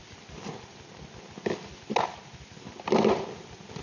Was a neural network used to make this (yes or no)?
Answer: no